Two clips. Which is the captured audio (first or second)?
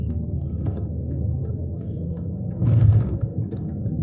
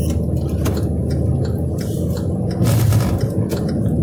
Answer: second